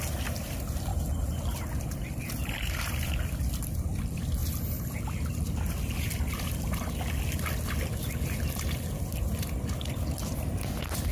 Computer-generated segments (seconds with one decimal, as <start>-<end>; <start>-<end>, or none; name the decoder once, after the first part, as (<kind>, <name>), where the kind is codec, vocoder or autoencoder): 0.0-0.9 (vocoder, BigVGAN v2); 1.8-4.4; 5.3-11.1